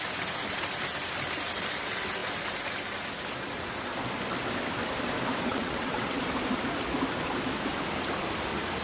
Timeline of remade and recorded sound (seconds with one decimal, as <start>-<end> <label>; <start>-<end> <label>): 0.0-5.5 recorded; 5.5-6.2 remade; 6.2-8.8 recorded